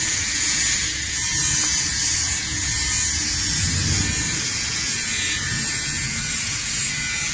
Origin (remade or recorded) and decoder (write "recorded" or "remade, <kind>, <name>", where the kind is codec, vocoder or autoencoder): remade, vocoder, Vocos